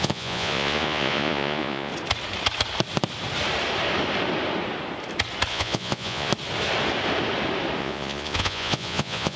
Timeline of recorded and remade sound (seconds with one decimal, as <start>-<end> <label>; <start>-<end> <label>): 0.0-1.9 remade; 1.9-5.5 recorded; 5.5-6.3 remade; 6.3-7.8 recorded; 7.8-9.4 remade